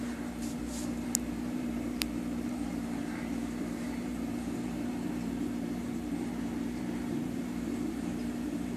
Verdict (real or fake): fake